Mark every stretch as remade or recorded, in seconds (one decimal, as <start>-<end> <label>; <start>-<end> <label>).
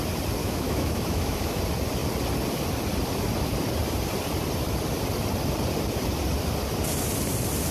0.0-0.4 recorded; 0.4-1.6 remade; 1.6-7.7 recorded